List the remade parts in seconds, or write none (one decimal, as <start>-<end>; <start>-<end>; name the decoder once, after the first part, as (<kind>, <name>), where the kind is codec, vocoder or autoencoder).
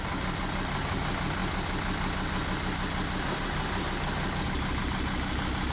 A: none